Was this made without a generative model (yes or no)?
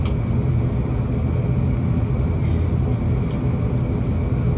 yes